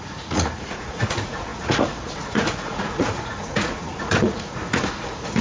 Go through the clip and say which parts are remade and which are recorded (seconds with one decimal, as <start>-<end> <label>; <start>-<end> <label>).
0.0-5.4 remade